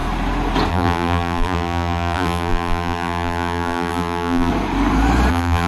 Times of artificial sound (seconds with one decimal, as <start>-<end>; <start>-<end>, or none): 0.7-4.5; 5.3-5.7